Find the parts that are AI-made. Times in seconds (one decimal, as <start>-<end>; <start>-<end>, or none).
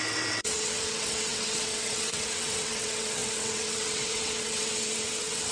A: 0.0-5.5